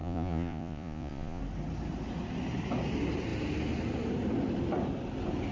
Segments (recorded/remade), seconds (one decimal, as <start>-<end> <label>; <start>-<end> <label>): 0.0-1.4 remade; 1.4-5.5 recorded